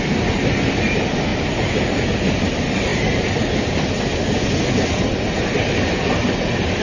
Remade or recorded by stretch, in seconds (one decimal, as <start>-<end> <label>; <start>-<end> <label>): 0.0-6.8 recorded